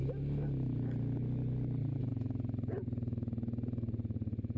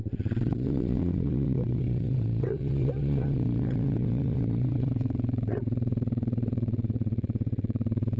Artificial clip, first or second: second